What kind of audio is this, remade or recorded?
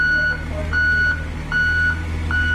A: recorded